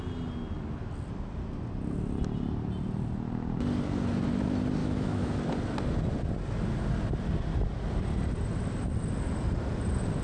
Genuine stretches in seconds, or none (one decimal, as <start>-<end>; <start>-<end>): 0.0-4.8; 5.4-10.2